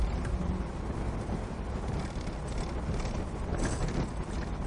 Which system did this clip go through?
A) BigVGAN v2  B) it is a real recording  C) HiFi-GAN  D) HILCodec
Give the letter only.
B